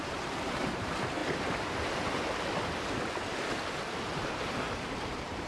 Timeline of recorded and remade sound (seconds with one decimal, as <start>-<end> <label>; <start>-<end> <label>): 0.0-1.2 remade; 1.2-4.5 recorded; 4.5-5.5 remade